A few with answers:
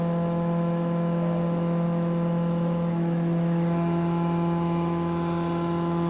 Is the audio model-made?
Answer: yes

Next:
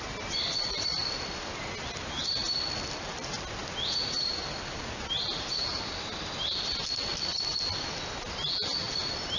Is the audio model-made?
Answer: no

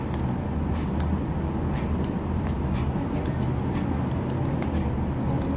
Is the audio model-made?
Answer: no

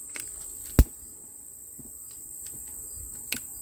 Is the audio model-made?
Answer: no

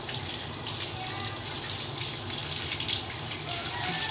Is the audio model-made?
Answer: no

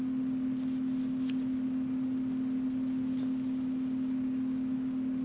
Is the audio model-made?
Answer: no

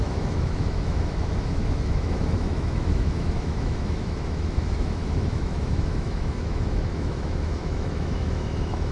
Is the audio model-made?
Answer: yes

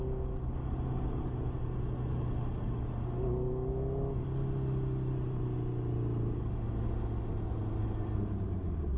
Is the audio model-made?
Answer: no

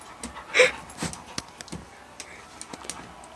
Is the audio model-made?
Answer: no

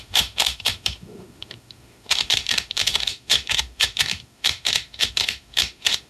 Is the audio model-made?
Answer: yes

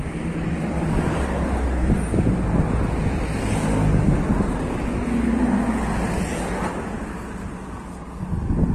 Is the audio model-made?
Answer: no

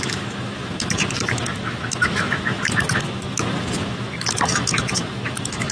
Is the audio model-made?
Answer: yes